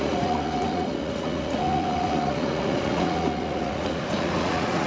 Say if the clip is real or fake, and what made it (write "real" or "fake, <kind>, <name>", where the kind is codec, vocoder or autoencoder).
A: fake, vocoder, Vocos